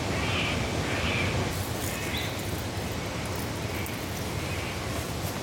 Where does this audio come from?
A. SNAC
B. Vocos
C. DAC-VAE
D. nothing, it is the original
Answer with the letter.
D